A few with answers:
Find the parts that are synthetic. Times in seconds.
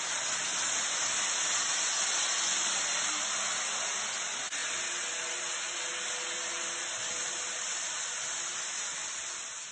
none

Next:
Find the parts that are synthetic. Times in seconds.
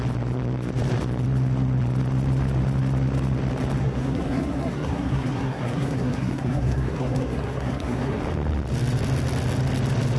3.8-8.2 (codec, SNAC)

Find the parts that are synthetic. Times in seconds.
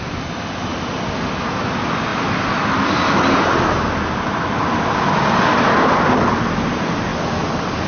none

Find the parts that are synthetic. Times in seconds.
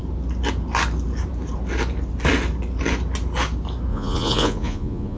3.9-5.2 (vocoder, Vocos)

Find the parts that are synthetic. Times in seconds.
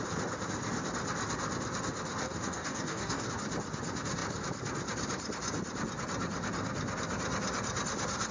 2.2-3.3 (codec, DAC)